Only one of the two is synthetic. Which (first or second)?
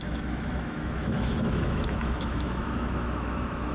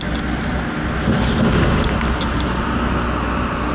first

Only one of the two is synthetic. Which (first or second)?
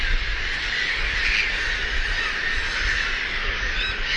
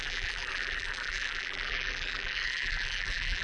second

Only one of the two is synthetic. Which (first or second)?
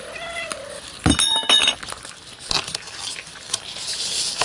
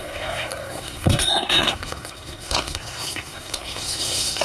second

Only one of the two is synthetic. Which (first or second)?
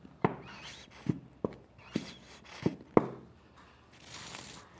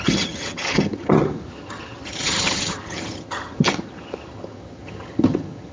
second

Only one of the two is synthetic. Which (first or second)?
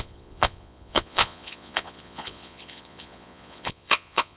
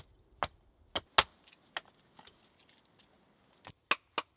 first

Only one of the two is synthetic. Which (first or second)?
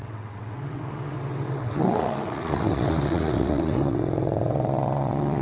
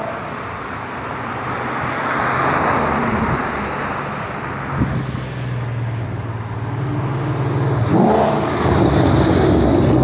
first